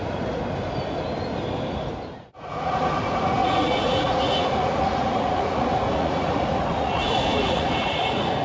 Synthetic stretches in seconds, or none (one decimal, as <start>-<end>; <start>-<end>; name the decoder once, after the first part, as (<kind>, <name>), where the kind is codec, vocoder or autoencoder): 0.0-0.4 (vocoder, Vocos); 2.1-8.4